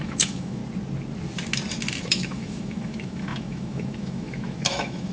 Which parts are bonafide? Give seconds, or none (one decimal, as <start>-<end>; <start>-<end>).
0.6-2.0